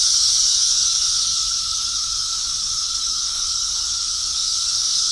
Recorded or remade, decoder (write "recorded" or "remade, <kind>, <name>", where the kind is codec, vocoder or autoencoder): remade, codec, DAC